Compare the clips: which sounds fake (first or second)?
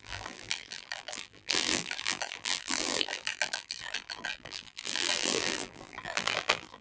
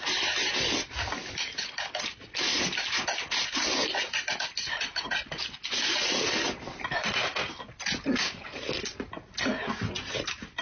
first